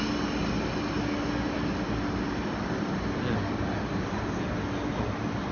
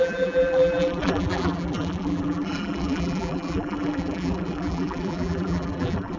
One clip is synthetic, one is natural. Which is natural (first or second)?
first